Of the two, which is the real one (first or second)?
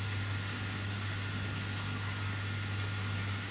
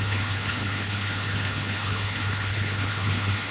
first